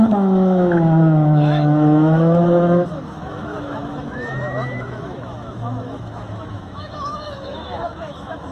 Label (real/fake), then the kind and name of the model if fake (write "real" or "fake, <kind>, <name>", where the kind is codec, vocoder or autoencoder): fake, autoencoder, DAC-VAE